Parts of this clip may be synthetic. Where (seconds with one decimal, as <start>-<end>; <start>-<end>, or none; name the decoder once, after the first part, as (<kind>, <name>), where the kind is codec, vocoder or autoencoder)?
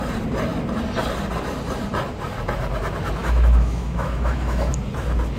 3.2-4.7 (autoencoder, DAC-VAE)